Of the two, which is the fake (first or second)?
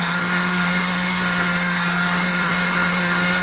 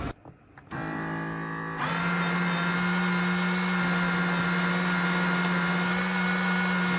first